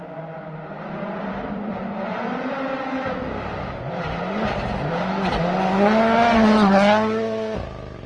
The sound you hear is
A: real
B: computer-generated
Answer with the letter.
A